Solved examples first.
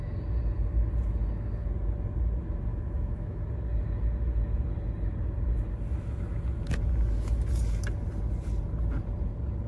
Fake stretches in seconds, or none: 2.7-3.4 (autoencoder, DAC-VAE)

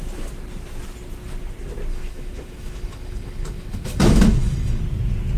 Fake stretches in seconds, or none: 1.9-4.8 (autoencoder, DAC-VAE)

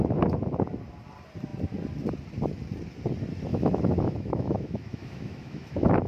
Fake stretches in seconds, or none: 3.5-6.1 (autoencoder, DAC-VAE)

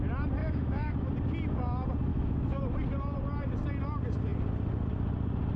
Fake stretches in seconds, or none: 0.4-1.1 (autoencoder, DAC-VAE); 2.1-2.6

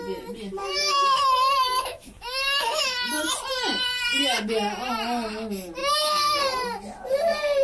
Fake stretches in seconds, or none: 0.6-3.1 (autoencoder, DAC-VAE); 5.8-6.4

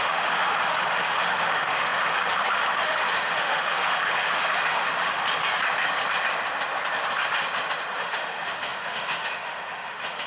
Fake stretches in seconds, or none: 0.0-5.2 (autoencoder, DAC-VAE); 8.0-10.3

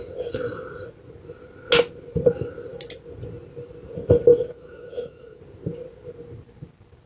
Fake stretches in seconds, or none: 4.3-5.4 (autoencoder, DAC-VAE)